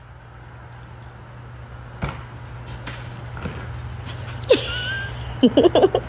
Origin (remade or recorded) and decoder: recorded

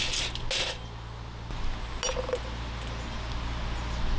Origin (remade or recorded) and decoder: recorded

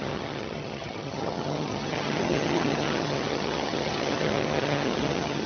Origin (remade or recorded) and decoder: remade, vocoder, HiFi-GAN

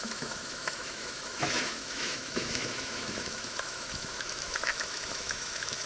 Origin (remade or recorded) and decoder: remade, autoencoder, DAC-VAE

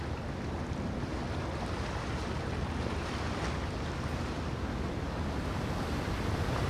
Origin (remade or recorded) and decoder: recorded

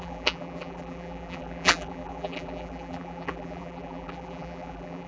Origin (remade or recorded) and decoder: remade, vocoder, BigVGAN v2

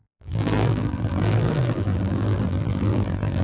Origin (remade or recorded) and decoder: remade, vocoder, BigVGAN v2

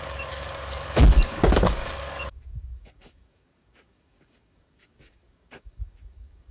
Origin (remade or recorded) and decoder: remade, codec, DAC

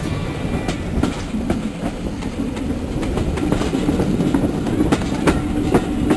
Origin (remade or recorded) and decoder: recorded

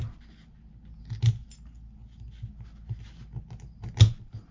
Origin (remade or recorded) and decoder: recorded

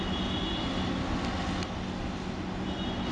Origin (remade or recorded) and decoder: recorded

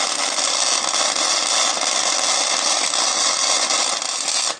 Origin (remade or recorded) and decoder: recorded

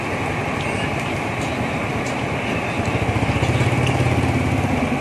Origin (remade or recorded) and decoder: recorded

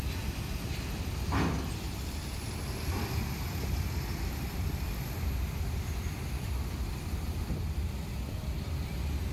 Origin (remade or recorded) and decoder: remade, vocoder, BigVGAN v2